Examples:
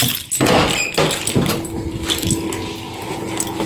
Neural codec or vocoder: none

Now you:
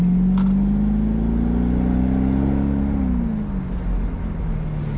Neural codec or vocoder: none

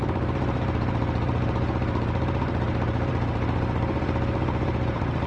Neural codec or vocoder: vocoder, BigVGAN v2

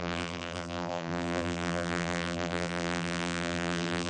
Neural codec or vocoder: vocoder, BigVGAN v2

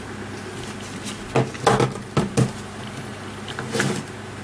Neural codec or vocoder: none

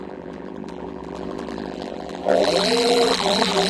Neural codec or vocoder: vocoder, BigVGAN v2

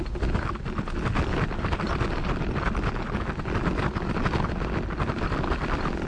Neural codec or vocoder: none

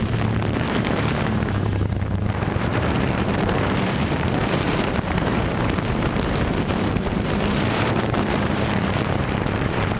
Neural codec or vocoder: vocoder, BigVGAN v2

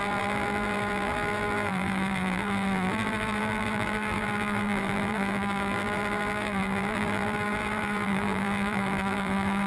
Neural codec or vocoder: vocoder, BigVGAN v2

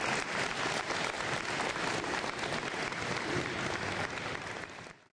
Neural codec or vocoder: vocoder, BigVGAN v2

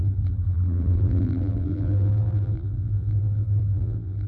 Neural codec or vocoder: vocoder, BigVGAN v2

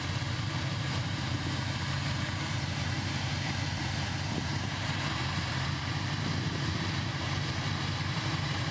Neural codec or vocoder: vocoder, BigVGAN v2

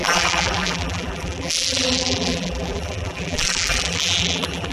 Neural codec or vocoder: vocoder, BigVGAN v2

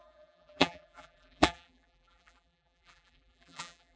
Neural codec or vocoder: vocoder, BigVGAN v2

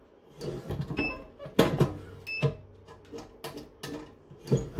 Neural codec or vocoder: none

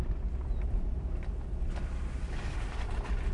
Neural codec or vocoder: none